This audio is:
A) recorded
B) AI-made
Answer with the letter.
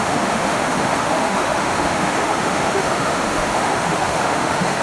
B